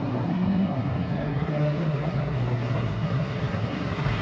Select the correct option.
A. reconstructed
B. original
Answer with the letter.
A